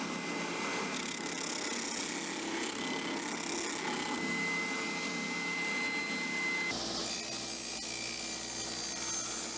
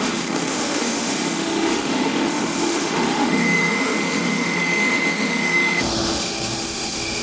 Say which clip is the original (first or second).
first